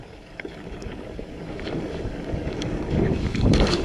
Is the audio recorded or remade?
remade